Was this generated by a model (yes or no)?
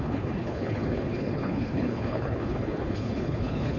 yes